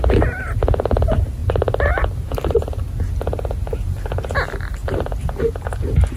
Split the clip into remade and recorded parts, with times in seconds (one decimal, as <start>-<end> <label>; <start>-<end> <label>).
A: 0.0-1.4 recorded; 1.4-2.3 remade; 2.3-4.8 recorded; 4.8-5.4 remade; 5.4-6.2 recorded